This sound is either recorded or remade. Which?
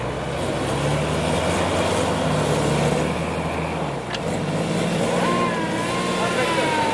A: recorded